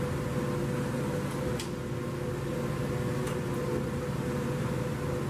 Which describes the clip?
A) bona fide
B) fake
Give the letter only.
A